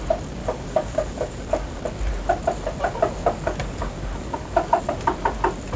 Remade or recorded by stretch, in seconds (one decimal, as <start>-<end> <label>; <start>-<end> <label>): 0.0-0.4 recorded; 0.4-1.8 remade; 1.8-3.2 recorded; 3.2-4.8 remade; 4.8-5.8 recorded